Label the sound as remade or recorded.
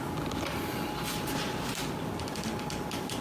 recorded